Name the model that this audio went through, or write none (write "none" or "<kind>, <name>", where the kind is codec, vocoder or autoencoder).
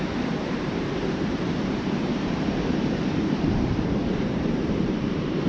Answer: vocoder, BigVGAN v2